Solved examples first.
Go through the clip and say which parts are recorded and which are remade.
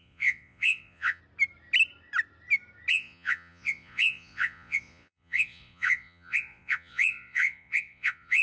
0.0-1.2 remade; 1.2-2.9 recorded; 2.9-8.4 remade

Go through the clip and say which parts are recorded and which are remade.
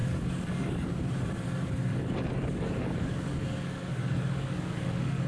0.0-1.0 remade; 1.0-1.9 recorded; 1.9-5.3 remade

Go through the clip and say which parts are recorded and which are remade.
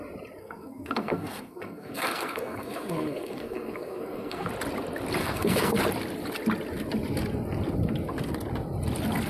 0.0-0.4 recorded; 0.4-4.5 remade; 4.5-5.2 recorded; 5.2-5.8 remade; 5.8-9.3 recorded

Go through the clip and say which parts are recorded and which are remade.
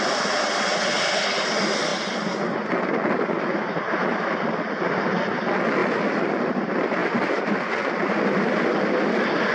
0.0-9.5 recorded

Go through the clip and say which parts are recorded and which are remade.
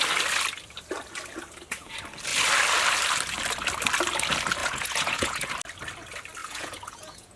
0.0-4.6 recorded; 4.6-5.5 remade; 5.5-6.4 recorded; 6.4-7.4 remade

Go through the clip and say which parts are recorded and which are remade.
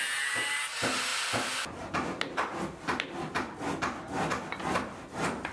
0.0-5.5 recorded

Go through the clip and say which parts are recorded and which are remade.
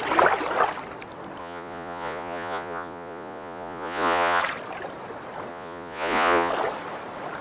0.0-1.4 recorded; 1.4-4.4 remade; 4.4-5.5 recorded; 5.5-6.5 remade; 6.5-7.4 recorded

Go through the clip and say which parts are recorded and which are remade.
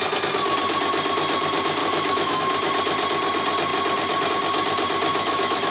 0.0-1.8 recorded; 1.8-2.4 remade; 2.4-5.1 recorded; 5.1-5.7 remade